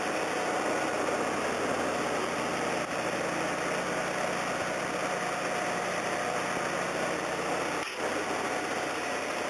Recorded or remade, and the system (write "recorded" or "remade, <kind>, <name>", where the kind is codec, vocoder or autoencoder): recorded